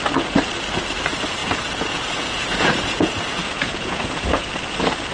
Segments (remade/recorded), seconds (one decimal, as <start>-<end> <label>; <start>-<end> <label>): 0.0-1.4 recorded; 1.4-4.5 remade; 4.5-5.1 recorded